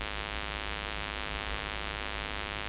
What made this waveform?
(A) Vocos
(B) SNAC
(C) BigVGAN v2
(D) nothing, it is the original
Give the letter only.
D